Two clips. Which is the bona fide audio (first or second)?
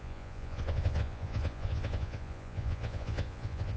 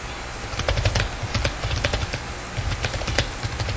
second